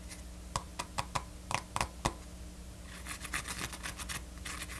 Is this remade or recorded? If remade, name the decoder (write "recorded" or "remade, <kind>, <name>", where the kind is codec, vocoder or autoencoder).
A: recorded